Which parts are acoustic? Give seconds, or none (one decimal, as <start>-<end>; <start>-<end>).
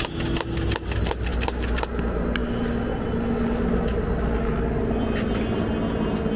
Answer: 0.0-6.4